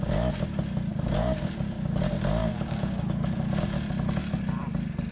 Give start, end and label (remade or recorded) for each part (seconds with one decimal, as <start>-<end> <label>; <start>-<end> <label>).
0.0-0.9 recorded; 0.9-1.5 remade; 1.5-2.4 recorded; 2.4-3.7 remade; 3.7-5.1 recorded